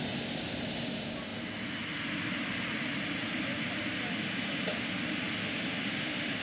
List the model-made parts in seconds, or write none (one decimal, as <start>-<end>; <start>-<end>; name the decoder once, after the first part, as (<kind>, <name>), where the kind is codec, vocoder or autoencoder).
none